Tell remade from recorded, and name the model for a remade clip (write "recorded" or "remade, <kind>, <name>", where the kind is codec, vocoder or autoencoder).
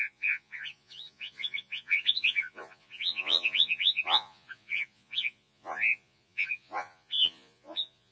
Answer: remade, vocoder, Vocos